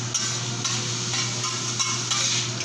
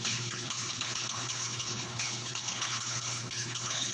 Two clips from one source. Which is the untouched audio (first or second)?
first